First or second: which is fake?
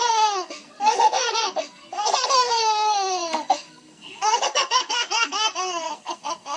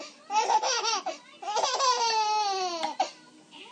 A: first